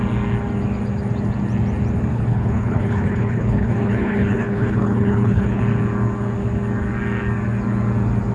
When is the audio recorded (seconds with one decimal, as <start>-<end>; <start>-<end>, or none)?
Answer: 0.0-2.1; 5.6-8.3